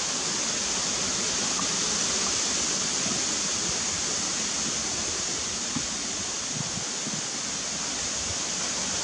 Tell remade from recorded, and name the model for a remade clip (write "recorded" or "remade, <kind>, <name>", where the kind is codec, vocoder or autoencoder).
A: recorded